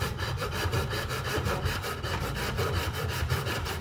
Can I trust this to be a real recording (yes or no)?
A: no